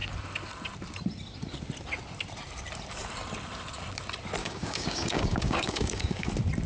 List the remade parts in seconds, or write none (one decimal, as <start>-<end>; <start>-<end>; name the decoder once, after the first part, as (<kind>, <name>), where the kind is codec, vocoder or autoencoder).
4.4-6.3 (codec, DAC)